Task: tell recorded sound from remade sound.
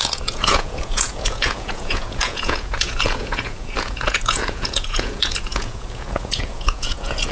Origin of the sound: remade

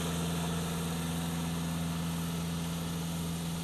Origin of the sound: recorded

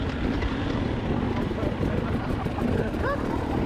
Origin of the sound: remade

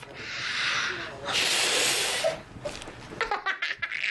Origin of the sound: recorded